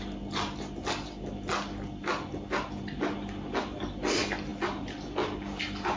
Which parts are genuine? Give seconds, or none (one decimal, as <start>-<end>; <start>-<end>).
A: 0.0-6.0